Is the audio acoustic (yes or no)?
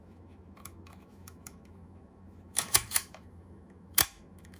no